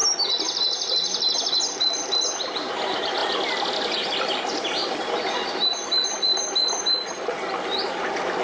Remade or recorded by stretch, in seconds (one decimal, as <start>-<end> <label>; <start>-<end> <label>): 0.0-3.2 recorded; 3.2-5.3 remade; 5.3-8.4 recorded